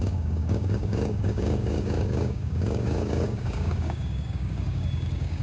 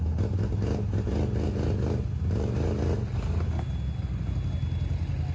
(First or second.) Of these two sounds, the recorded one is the second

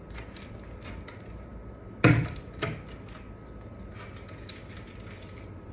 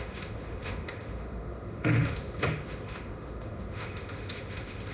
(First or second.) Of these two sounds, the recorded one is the first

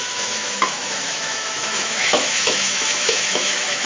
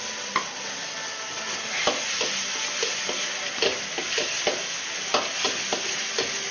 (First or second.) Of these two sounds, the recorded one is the second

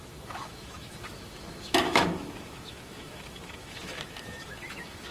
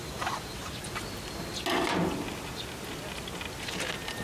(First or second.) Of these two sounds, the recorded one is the second